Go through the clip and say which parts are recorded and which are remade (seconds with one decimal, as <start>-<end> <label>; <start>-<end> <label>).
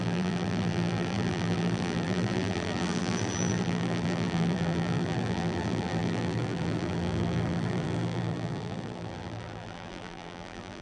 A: 0.0-10.8 remade